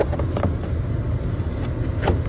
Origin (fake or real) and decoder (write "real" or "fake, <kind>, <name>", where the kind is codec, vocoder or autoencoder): real